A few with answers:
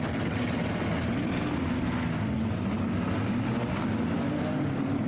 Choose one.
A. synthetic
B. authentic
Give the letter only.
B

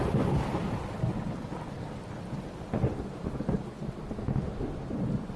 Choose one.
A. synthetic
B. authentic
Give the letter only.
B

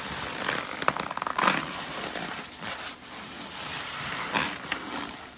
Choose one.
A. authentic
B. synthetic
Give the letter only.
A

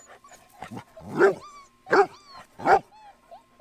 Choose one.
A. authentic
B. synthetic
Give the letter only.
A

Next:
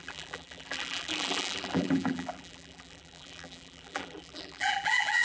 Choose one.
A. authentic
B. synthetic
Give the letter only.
B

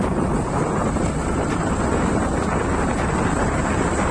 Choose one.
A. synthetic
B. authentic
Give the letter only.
B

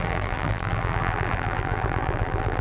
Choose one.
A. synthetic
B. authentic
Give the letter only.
A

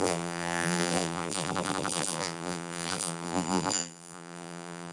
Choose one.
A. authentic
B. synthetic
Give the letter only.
B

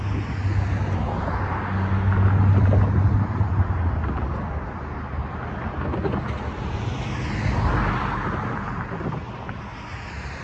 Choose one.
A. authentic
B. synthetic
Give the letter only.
A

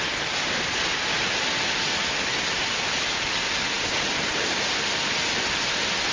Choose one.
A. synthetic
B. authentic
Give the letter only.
B